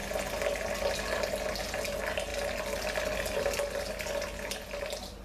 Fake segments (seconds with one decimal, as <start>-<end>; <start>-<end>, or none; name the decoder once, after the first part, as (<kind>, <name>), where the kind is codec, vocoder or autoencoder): none